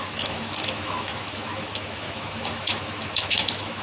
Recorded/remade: remade